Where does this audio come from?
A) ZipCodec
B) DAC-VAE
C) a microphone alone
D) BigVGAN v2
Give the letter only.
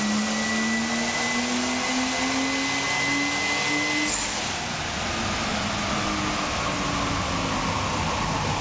C